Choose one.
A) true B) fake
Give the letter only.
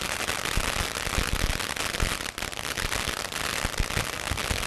A